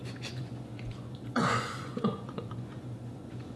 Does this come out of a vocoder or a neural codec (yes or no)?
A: yes